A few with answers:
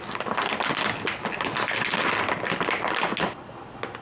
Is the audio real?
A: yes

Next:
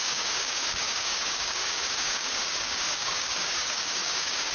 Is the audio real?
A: no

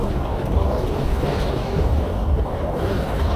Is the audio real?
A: no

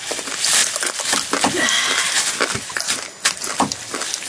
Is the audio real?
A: yes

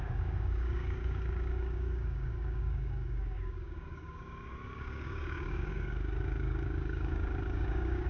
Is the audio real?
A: no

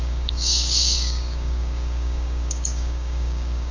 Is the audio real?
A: no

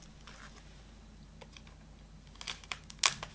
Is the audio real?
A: yes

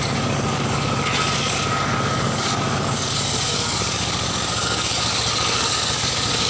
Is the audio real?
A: no